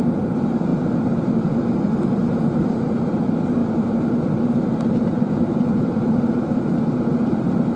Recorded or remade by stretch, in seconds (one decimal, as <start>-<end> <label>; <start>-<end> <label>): 0.0-3.6 recorded; 3.6-7.8 remade